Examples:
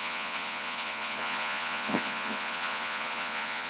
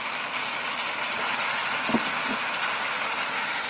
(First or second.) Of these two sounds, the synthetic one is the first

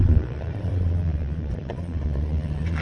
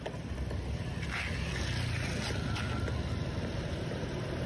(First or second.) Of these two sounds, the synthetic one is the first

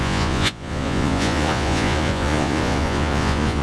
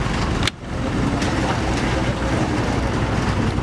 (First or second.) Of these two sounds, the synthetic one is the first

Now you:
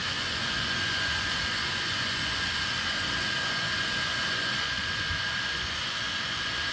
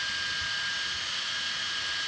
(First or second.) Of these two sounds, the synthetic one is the first